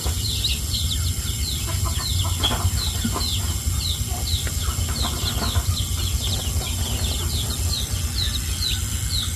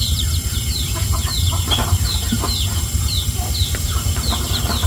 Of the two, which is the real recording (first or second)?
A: first